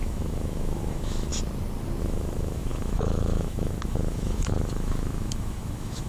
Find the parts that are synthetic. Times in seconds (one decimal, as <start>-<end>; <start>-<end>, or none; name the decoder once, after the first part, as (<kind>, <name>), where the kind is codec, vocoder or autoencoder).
0.0-1.3 (autoencoder, DAC-VAE); 2.0-6.1

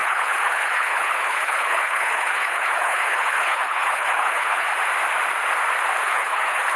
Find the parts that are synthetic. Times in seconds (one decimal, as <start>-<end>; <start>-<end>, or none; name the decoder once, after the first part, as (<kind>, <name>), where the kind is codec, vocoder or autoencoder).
0.0-4.7 (codec, HILCodec); 6.0-6.8

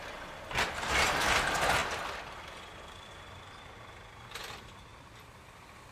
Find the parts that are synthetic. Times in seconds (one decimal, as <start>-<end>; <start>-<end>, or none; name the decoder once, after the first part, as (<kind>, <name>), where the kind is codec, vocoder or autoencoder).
none